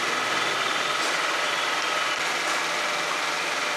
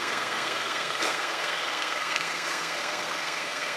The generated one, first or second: second